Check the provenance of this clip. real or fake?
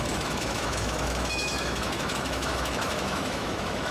fake